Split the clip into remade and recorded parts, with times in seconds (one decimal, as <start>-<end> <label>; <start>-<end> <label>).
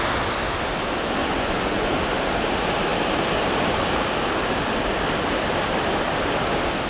0.0-1.2 recorded; 1.2-1.9 remade; 1.9-6.9 recorded